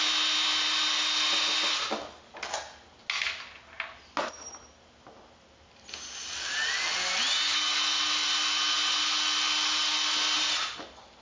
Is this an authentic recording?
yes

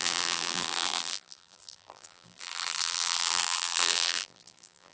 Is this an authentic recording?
no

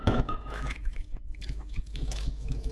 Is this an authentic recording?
no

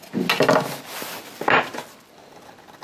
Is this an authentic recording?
yes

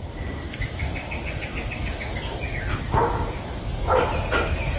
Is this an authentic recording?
yes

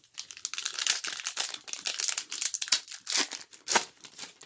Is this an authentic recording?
yes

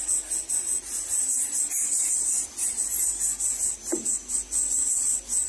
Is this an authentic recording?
yes